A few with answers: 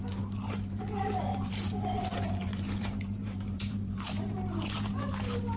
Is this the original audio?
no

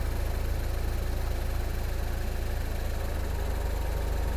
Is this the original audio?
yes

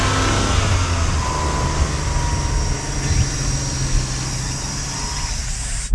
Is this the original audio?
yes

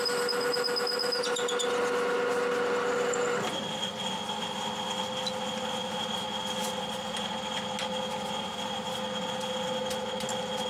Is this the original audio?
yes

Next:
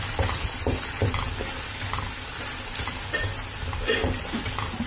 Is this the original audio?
yes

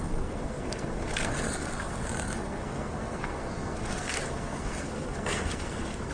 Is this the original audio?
no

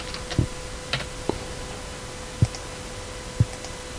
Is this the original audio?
yes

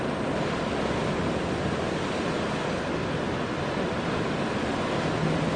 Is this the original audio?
yes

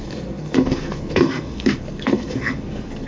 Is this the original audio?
no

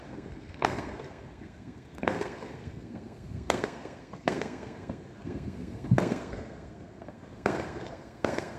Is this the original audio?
no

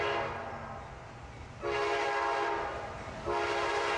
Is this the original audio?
yes